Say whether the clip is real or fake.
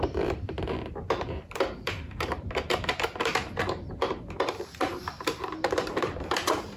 fake